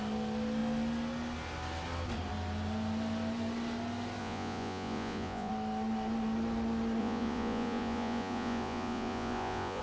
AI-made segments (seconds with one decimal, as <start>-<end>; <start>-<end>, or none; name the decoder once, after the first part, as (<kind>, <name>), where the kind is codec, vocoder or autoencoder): 4.2-5.5 (vocoder, Vocos); 7.0-9.8